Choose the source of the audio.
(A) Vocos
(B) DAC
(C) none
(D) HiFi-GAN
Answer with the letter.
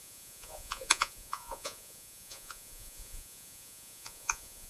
A